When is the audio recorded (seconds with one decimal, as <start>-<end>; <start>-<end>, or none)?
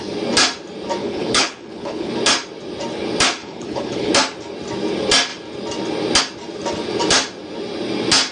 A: 0.0-1.0; 2.1-3.4; 4.1-8.3